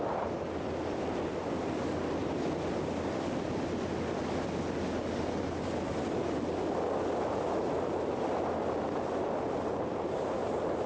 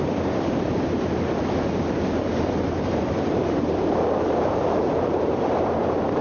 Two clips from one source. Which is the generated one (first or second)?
second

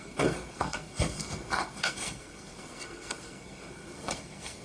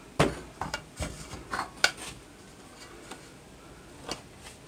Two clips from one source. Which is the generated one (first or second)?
first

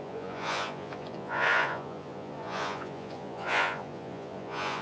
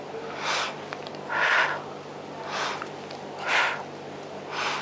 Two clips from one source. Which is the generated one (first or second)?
first